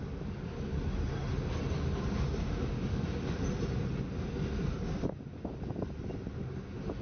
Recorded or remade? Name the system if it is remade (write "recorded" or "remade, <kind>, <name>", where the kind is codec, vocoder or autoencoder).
recorded